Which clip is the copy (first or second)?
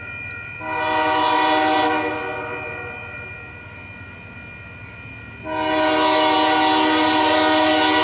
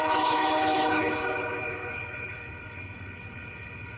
second